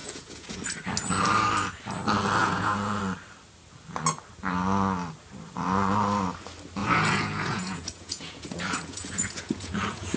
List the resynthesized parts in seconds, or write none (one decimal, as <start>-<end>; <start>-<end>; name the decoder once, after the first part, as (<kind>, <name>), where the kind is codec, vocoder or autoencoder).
0.0-0.6 (vocoder, Vocos); 2.4-3.0; 6.8-10.2